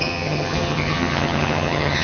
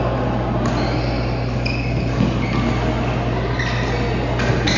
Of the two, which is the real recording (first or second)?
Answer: second